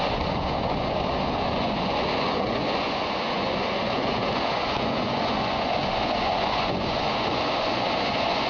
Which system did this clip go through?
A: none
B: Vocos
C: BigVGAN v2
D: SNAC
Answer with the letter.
B